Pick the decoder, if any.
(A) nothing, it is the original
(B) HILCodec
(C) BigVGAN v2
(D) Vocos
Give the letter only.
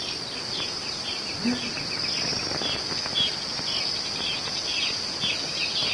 A